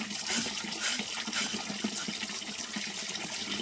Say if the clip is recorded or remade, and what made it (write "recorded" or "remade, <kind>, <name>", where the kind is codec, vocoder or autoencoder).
recorded